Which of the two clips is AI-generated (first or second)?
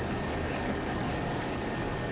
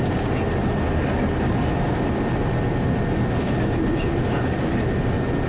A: first